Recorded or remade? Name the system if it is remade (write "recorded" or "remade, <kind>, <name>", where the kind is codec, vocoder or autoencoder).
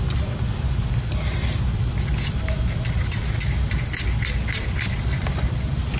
recorded